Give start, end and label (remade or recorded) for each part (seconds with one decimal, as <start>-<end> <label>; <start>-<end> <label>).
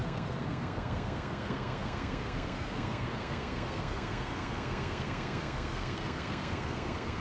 0.0-7.2 remade